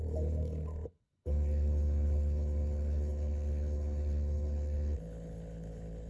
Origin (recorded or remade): remade